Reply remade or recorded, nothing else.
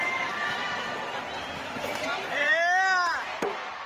recorded